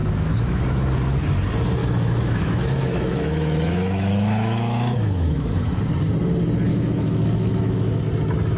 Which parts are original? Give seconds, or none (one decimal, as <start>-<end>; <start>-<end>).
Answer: 0.6-1.8; 5.8-6.7; 8.0-8.6